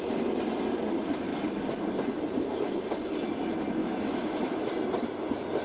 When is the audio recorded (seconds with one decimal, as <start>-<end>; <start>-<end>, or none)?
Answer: 0.0-3.8; 4.7-5.6